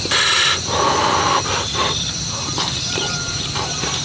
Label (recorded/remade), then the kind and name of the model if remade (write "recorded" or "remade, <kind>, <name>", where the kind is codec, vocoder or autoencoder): recorded